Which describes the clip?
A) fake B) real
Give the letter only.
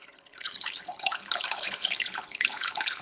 A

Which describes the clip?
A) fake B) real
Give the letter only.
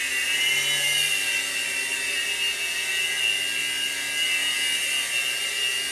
B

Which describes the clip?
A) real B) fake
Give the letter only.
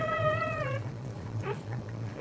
B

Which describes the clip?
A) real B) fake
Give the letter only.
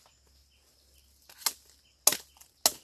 A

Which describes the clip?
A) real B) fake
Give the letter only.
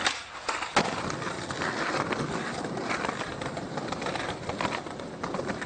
A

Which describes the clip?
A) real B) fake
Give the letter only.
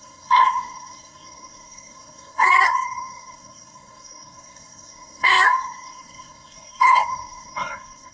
B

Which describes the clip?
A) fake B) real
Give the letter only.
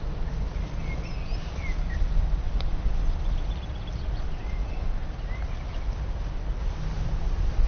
B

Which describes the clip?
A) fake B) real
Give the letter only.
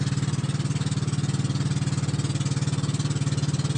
B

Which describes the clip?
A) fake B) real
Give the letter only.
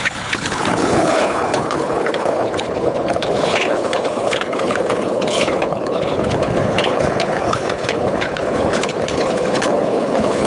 A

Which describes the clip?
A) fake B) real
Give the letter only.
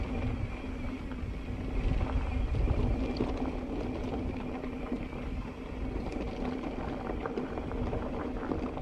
B